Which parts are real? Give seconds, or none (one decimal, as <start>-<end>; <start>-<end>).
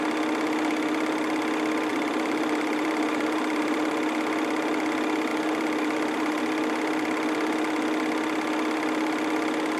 0.0-1.9; 3.8-5.3; 6.4-9.8